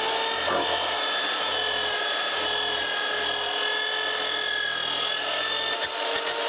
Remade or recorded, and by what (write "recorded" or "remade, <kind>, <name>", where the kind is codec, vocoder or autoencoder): recorded